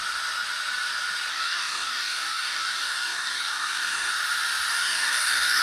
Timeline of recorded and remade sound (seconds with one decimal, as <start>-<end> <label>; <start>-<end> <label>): 0.0-1.3 recorded; 1.3-4.1 remade; 4.1-4.7 recorded; 4.7-5.6 remade